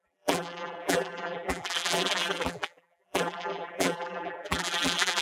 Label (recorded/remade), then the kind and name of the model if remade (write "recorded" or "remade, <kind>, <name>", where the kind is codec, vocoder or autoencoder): remade, vocoder, BigVGAN v2